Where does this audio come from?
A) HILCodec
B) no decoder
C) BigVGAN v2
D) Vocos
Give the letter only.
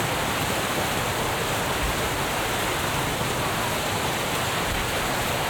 B